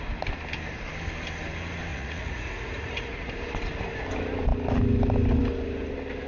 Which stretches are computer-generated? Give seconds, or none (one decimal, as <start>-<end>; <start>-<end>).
1.9-3.3